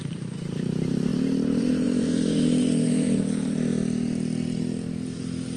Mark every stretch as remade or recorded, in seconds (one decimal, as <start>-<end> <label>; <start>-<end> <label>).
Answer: 0.0-3.7 remade; 3.7-5.6 recorded